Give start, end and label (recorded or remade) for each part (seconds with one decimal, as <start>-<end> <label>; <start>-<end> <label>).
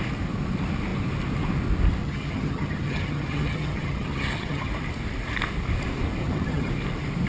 0.0-2.0 recorded; 2.0-4.7 remade; 4.7-6.2 recorded; 6.2-6.7 remade; 6.7-7.3 recorded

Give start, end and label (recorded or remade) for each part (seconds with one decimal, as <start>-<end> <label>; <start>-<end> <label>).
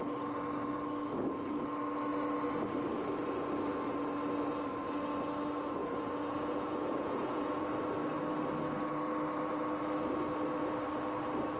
0.0-5.8 recorded; 5.8-7.6 remade; 7.6-11.6 recorded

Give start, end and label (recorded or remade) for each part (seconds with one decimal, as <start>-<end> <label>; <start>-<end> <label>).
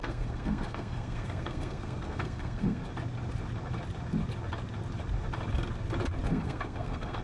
0.0-2.8 remade; 2.8-6.3 recorded; 6.3-7.2 remade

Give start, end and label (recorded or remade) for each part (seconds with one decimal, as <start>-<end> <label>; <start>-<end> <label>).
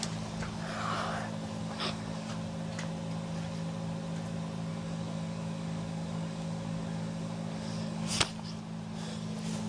0.0-1.6 recorded; 1.6-2.3 remade; 2.3-4.7 recorded; 4.7-8.1 remade; 8.1-9.7 recorded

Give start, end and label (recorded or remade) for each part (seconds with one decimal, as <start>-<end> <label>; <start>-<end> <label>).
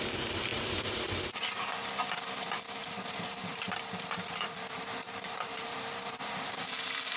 0.0-0.5 recorded; 0.5-1.4 remade; 1.4-2.8 recorded; 2.8-7.2 remade